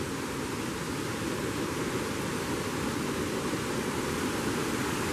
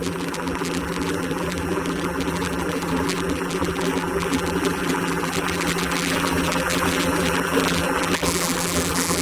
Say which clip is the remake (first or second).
second